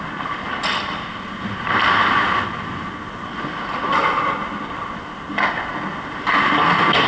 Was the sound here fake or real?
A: real